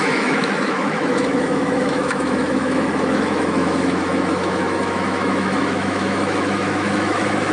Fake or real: fake